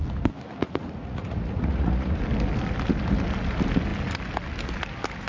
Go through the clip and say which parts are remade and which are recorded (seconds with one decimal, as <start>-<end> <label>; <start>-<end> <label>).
0.0-0.6 recorded; 0.6-2.2 remade; 2.2-5.3 recorded